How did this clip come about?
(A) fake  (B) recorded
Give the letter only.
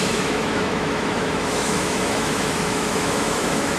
A